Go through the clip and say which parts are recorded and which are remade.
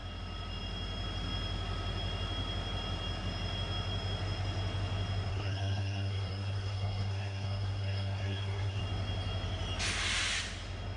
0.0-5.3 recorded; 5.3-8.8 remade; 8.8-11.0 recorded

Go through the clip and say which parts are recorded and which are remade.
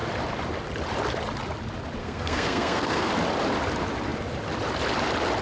0.0-2.0 recorded; 2.0-3.1 remade; 3.1-5.4 recorded